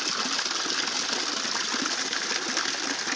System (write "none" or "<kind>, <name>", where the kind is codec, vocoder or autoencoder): none